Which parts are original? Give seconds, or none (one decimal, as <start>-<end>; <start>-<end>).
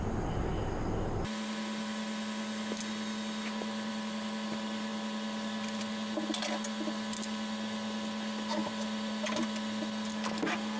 0.0-10.8